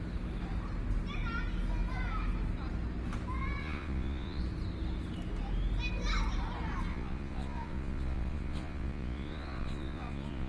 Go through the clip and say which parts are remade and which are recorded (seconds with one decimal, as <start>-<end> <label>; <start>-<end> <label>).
0.0-3.6 recorded; 3.6-4.4 remade; 4.4-6.9 recorded; 6.9-10.5 remade